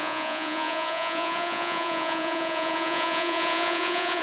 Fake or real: fake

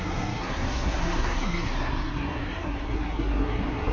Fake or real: fake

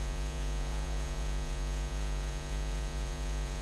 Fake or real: fake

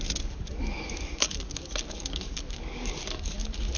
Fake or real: fake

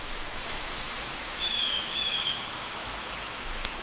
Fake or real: fake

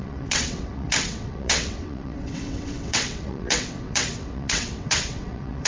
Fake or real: fake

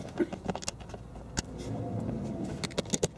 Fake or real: real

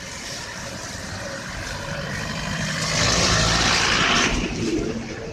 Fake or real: fake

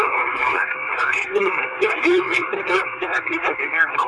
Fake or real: fake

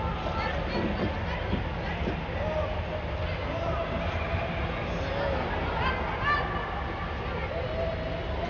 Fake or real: real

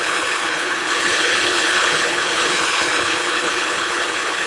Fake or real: fake